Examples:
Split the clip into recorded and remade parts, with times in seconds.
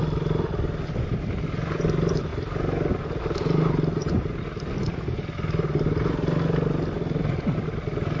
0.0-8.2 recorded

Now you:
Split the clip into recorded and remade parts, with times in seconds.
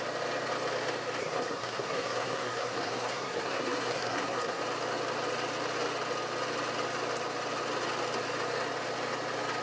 0.0-1.2 recorded; 1.2-4.6 remade; 4.6-9.6 recorded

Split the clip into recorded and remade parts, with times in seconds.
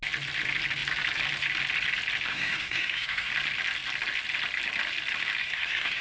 0.0-2.3 recorded; 2.3-3.3 remade; 3.3-5.4 recorded; 5.4-6.0 remade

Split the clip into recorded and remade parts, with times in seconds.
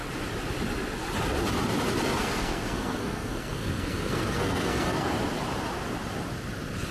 0.0-2.2 recorded; 2.2-5.1 remade; 5.1-6.9 recorded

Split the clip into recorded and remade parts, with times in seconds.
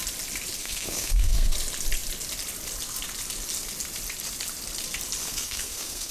0.0-0.6 recorded; 0.6-1.5 remade; 1.5-5.2 recorded; 5.2-6.1 remade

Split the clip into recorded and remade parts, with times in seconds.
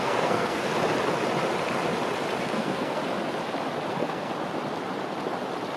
0.0-0.7 remade; 0.7-2.4 recorded; 2.4-3.0 remade; 3.0-3.9 recorded; 3.9-4.3 remade; 4.3-5.8 recorded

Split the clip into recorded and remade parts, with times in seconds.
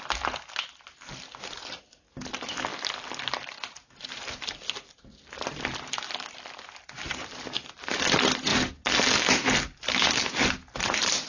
0.0-11.3 recorded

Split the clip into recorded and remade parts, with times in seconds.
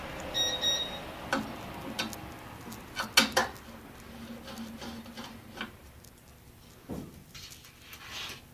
0.0-8.5 recorded